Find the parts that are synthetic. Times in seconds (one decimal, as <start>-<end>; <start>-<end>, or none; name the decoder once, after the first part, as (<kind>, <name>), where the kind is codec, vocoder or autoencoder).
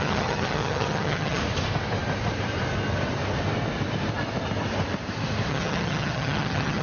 0.0-1.4 (vocoder, HiFi-GAN); 5.5-6.8